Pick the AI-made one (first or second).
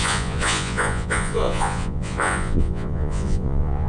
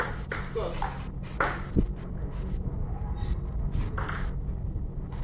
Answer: first